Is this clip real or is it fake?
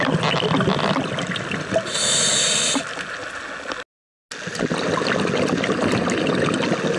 real